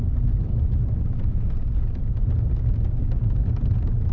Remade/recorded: recorded